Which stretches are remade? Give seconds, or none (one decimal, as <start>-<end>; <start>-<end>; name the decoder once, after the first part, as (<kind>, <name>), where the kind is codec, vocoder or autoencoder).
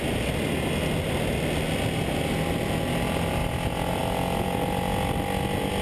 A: none